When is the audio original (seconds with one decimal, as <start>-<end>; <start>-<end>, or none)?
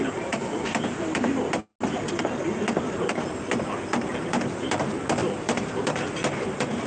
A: 0.0-5.2; 5.7-6.9